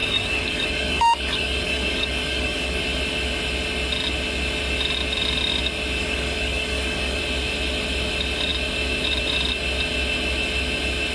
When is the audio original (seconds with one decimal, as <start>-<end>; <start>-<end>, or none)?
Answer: 2.8-6.0; 7.2-11.1